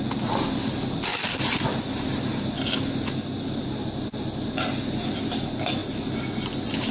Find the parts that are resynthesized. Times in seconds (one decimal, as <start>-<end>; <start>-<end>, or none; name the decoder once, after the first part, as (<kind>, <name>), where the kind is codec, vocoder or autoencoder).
none